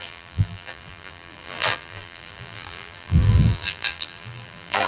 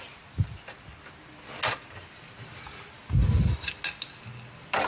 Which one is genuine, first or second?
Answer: second